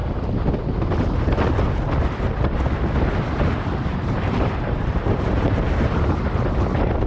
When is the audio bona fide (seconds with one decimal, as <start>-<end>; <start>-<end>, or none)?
0.0-3.9; 6.2-7.1